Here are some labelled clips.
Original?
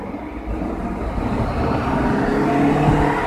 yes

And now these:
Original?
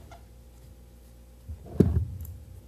yes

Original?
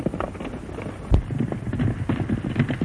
yes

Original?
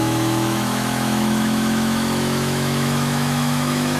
no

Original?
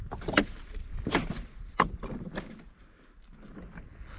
yes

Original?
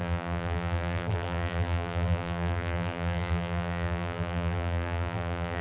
no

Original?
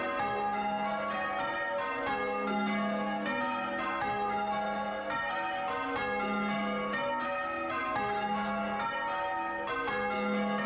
yes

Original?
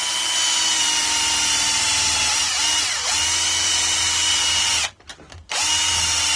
yes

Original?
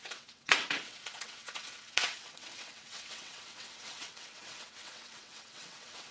no